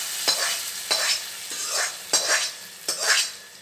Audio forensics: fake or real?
fake